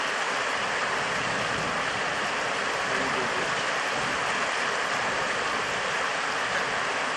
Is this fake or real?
real